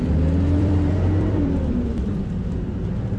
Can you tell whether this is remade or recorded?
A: remade